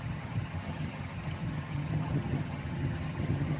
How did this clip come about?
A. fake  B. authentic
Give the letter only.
A